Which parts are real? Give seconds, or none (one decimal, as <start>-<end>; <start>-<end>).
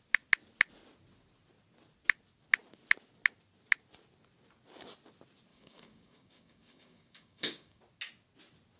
0.0-5.5; 7.8-8.8